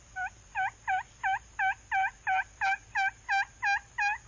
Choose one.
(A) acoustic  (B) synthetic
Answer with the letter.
A